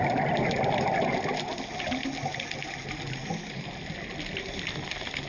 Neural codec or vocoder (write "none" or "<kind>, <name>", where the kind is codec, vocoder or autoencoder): none